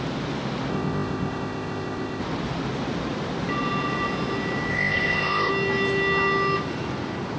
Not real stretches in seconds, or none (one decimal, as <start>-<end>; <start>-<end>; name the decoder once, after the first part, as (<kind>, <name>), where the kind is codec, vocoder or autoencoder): 0.7-2.2 (codec, ZipCodec); 4.7-5.5